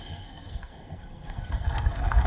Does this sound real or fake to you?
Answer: fake